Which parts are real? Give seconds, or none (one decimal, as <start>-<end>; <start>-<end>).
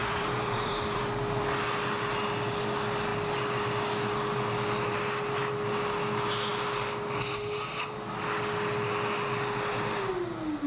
1.0-10.7